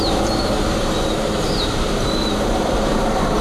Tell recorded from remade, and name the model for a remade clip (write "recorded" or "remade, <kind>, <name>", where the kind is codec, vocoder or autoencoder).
remade, vocoder, BigVGAN v2